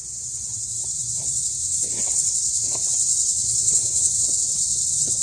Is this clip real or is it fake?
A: fake